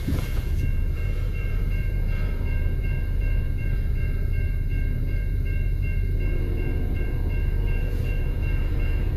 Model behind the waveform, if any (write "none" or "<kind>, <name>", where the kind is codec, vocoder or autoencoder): vocoder, Vocos